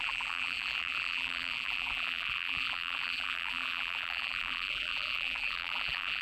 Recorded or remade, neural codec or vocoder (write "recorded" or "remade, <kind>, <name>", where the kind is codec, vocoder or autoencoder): remade, vocoder, BigVGAN v2